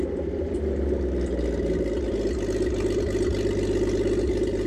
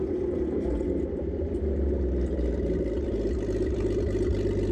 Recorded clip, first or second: first